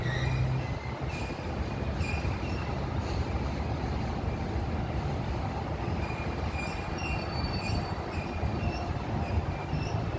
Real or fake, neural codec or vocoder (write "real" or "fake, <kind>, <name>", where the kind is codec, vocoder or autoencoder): real